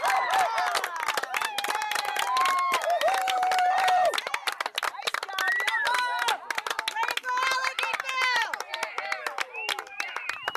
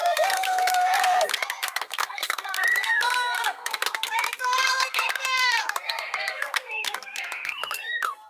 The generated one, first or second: second